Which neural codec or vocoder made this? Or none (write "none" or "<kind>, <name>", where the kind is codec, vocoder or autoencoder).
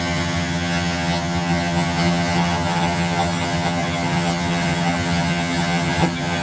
vocoder, HiFi-GAN